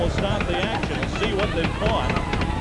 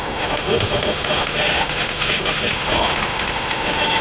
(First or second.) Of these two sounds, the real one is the first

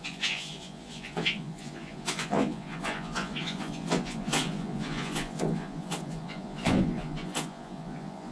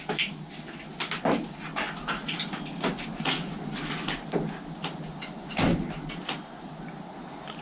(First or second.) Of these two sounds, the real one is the second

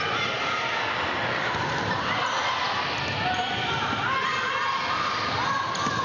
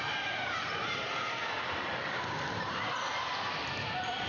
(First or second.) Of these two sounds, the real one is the first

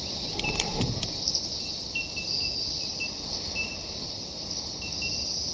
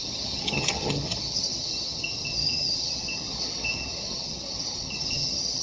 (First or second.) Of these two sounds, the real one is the first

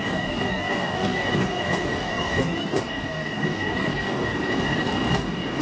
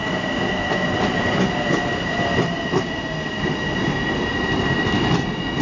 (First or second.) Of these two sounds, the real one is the second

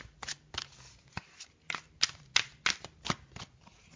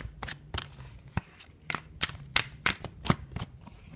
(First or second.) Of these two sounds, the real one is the first